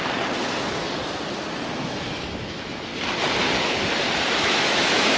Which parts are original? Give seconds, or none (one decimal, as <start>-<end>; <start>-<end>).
0.0-1.8; 2.9-4.4